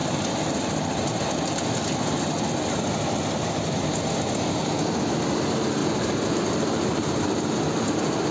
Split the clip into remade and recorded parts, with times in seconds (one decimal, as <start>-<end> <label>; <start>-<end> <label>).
0.0-1.0 remade; 1.0-5.8 recorded; 5.8-7.5 remade; 7.5-8.3 recorded